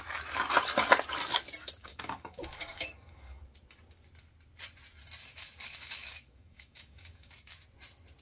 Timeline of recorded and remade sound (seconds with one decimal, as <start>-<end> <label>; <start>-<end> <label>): 0.0-1.8 recorded; 1.8-3.4 remade; 3.4-5.2 recorded; 5.2-7.6 remade; 7.6-8.2 recorded